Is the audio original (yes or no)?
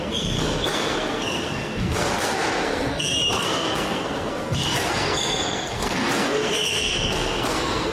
no